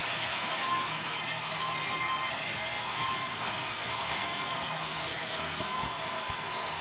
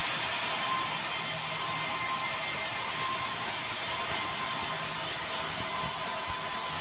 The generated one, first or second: first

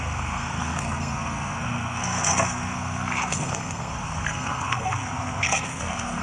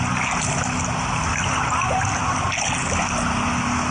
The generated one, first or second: first